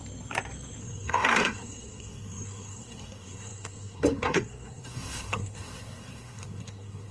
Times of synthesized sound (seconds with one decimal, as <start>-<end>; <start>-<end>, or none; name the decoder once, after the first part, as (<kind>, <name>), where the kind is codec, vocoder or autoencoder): 0.8-7.1 (codec, SNAC)